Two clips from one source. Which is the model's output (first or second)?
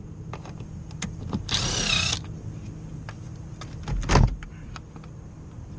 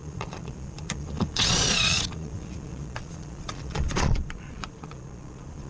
second